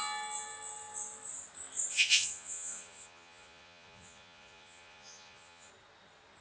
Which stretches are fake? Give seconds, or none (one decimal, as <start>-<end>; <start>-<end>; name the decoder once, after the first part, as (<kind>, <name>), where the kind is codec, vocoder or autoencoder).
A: 1.9-5.7 (vocoder, Vocos)